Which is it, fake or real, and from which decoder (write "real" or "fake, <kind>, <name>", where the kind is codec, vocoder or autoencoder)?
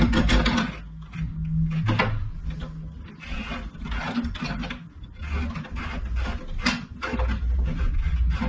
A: real